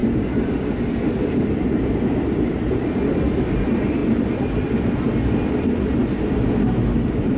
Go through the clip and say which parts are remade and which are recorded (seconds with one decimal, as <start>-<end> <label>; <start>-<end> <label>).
0.0-7.4 recorded